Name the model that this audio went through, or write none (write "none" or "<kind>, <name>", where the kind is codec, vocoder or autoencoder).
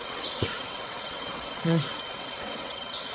vocoder, WaveNeXt